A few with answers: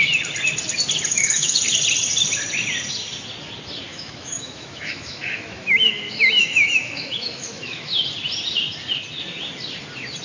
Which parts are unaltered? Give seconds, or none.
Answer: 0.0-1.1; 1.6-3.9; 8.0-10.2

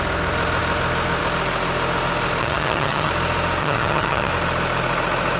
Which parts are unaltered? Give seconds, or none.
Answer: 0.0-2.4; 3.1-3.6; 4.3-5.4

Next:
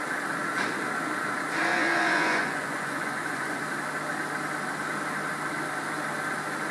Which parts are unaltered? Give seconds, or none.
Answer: 0.0-1.7; 3.6-6.7

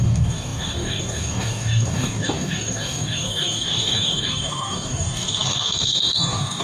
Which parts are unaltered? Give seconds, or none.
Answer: none